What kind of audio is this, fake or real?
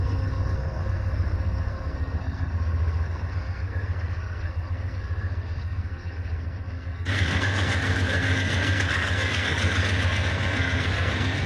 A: fake